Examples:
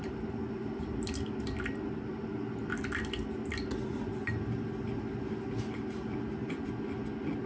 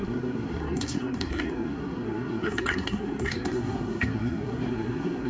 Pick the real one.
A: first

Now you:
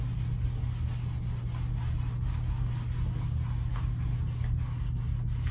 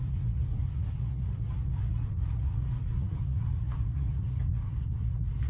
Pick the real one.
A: first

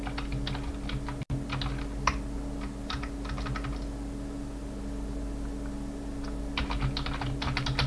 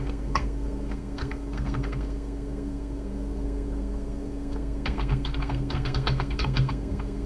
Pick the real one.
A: first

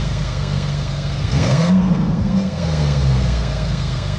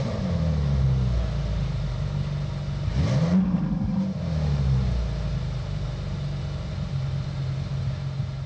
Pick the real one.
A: second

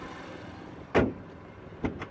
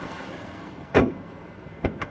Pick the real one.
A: first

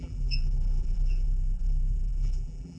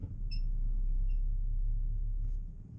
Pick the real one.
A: second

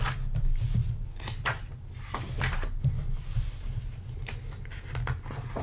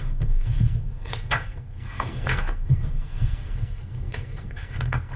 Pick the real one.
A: first